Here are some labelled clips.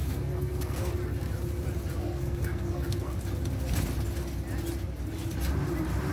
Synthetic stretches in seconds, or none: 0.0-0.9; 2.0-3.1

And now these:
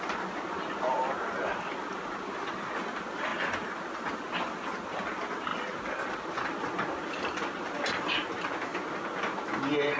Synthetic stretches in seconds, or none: none

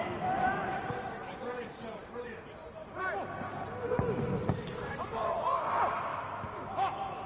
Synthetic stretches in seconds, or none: 6.1-7.3

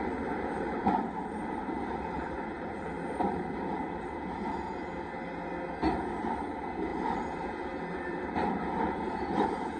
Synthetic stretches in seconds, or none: 0.0-3.7; 6.2-9.8

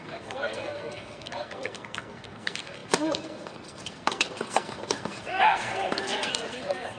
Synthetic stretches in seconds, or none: 0.0-7.0